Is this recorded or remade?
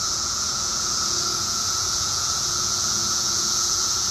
remade